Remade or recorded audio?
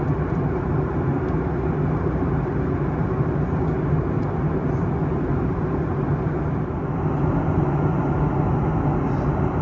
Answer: recorded